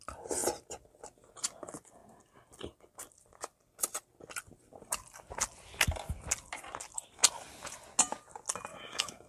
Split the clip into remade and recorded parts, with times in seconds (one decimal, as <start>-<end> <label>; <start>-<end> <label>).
0.0-8.7 recorded; 8.7-9.3 remade